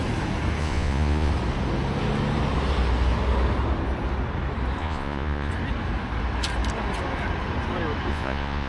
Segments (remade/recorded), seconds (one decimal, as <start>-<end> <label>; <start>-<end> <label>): 0.0-0.6 recorded; 0.6-1.3 remade; 1.3-4.8 recorded; 4.8-5.5 remade; 5.5-8.1 recorded; 8.1-8.7 remade